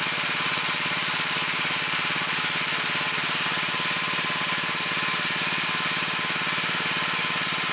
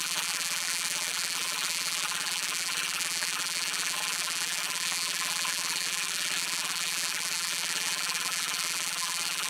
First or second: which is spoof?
second